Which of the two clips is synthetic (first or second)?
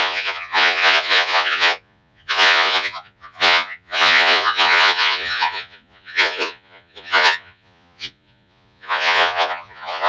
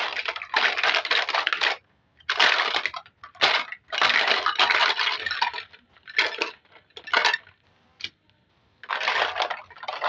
first